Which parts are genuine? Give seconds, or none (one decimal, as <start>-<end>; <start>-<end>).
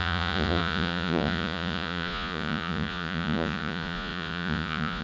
none